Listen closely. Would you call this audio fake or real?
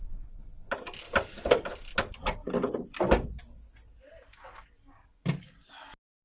real